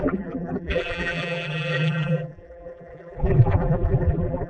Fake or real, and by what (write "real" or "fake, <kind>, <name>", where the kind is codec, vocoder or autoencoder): fake, vocoder, BigVGAN v2